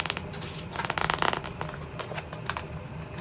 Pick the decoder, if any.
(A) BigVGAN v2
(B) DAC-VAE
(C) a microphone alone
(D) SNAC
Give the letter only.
C